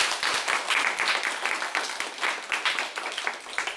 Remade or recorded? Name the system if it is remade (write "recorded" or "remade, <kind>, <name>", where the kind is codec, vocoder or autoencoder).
recorded